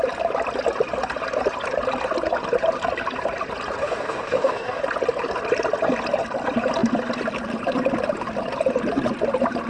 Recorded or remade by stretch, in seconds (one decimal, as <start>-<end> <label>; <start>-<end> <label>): 0.0-3.8 recorded; 3.8-4.8 remade; 4.8-9.7 recorded